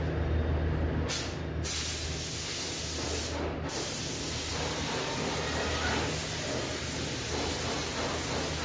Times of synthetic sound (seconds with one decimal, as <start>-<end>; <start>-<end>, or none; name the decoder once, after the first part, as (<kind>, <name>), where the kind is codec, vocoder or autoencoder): none